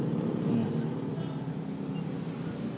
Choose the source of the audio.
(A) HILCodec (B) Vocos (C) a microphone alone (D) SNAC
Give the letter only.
C